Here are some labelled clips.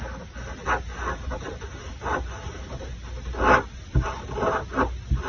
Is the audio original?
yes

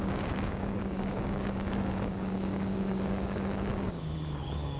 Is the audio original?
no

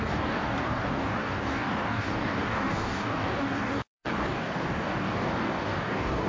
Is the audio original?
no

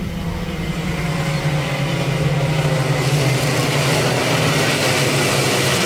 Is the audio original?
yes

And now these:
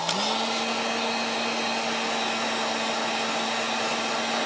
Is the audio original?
yes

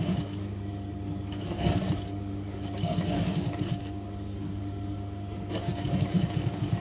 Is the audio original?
no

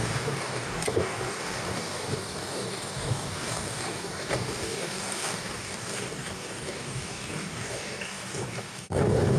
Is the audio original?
no